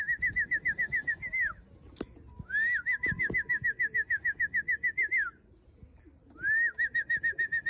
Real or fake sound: real